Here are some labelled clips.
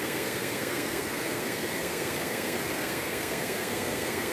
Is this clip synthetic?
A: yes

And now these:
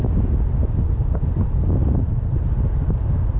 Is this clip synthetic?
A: no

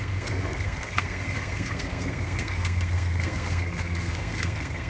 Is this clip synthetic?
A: yes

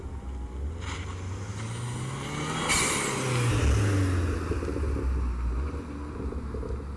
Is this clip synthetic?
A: no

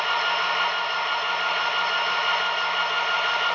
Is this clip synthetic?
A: no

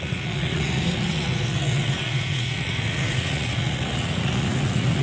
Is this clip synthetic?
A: yes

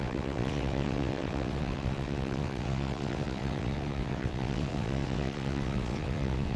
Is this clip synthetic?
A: yes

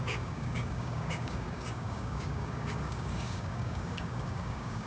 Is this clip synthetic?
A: yes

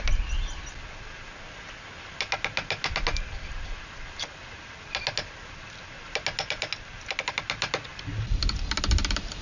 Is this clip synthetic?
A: no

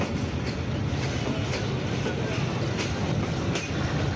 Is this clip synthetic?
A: no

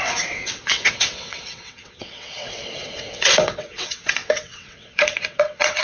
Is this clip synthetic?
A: yes